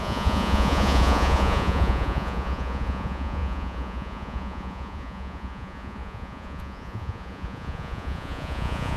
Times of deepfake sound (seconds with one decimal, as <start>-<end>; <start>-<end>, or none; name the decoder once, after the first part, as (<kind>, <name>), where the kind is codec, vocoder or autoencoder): 0.0-9.0 (vocoder, Vocos)

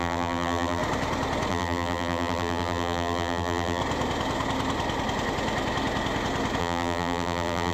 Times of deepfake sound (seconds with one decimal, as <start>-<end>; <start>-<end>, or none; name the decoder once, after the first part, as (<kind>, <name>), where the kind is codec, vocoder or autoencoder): 0.0-0.8 (vocoder, BigVGAN v2); 1.5-3.8; 6.6-7.7

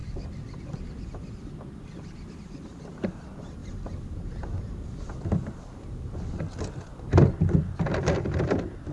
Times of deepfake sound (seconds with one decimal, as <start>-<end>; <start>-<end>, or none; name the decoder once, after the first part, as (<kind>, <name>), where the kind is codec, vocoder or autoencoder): 2.3-3.6 (vocoder, BigVGAN v2); 7.3-8.9

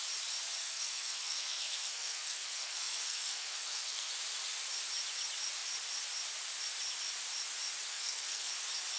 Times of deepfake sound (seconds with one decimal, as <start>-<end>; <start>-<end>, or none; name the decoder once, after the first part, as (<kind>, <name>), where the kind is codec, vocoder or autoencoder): 0.6-4.1 (codec, SNAC); 7.9-8.5

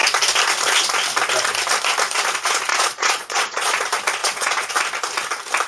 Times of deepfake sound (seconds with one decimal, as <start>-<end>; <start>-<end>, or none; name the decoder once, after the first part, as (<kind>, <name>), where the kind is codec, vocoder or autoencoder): 2.7-3.8 (vocoder, Vocos); 4.2-4.7